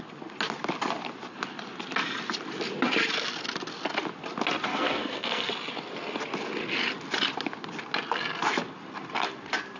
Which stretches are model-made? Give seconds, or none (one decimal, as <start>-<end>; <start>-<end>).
4.7-5.5